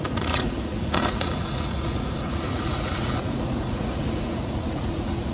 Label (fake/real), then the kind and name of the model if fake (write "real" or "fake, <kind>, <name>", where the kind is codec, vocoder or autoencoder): fake, vocoder, Vocos